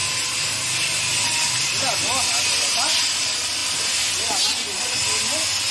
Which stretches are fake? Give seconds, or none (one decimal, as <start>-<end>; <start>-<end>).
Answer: none